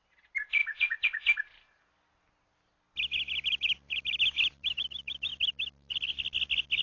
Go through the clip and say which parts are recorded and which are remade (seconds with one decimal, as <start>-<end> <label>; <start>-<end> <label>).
0.0-6.8 recorded